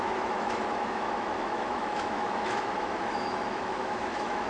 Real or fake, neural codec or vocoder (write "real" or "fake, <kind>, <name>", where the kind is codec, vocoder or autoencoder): fake, autoencoder, DAC-VAE